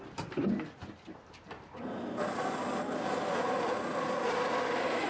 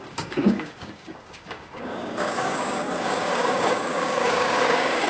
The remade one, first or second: second